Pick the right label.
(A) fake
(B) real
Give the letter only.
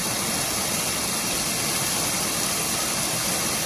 B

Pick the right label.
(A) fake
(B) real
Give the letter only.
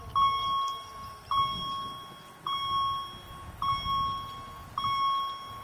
B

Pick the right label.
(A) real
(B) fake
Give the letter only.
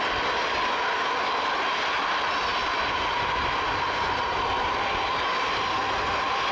A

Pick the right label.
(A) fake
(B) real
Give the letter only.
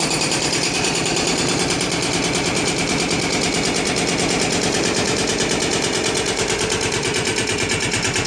A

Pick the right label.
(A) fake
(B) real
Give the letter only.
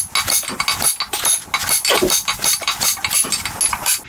B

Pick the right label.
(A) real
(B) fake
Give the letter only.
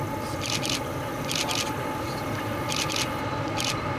A